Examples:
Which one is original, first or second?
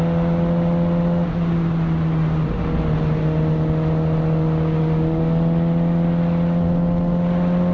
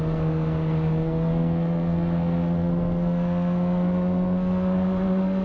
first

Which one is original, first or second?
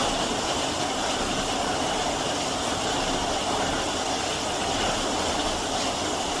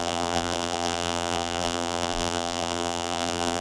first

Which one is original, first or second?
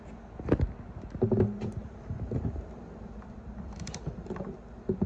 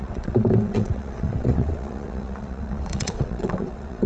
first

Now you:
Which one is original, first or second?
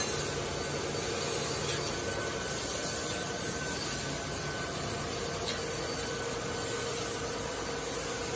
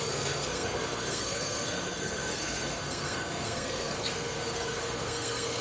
first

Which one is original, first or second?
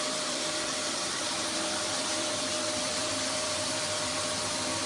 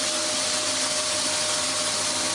second